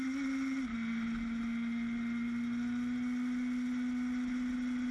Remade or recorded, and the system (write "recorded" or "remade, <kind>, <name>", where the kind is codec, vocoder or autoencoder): recorded